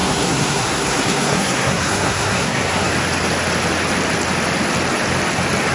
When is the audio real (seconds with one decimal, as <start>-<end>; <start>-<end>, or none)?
2.9-5.7